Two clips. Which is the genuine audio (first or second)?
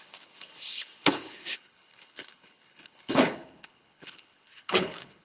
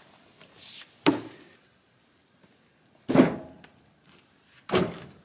second